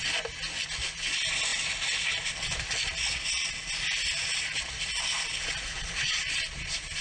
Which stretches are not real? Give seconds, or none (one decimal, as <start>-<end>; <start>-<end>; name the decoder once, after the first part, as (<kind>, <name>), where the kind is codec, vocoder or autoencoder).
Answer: 5.8-7.0 (vocoder, Vocos)